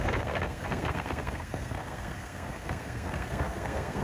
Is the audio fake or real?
fake